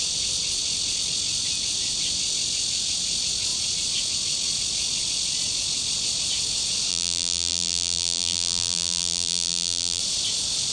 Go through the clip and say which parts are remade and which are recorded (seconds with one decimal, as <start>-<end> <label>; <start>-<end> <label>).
0.0-6.9 recorded; 6.9-10.0 remade; 10.0-10.7 recorded